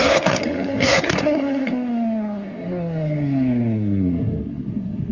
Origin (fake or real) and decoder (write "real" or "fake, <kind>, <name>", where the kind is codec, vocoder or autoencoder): fake, codec, SNAC